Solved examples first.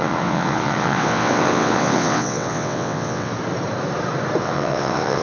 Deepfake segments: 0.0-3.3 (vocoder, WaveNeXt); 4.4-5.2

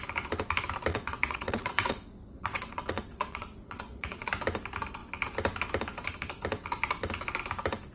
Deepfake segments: 0.9-4.3 (vocoder, WaveNeXt)

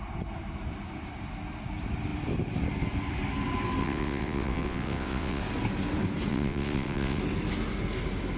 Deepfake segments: 3.8-5.4 (vocoder, WaveNeXt); 6.3-7.2

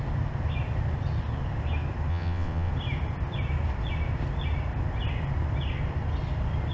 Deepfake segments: 2.1-2.7 (vocoder, WaveNeXt)

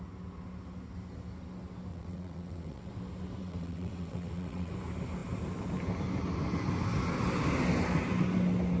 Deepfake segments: 1.9-2.9 (vocoder, WaveNeXt); 3.4-4.7